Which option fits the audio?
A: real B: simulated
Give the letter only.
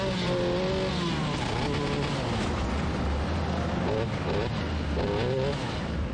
A